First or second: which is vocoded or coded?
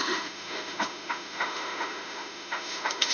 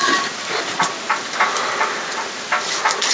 first